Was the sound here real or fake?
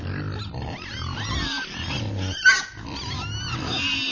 real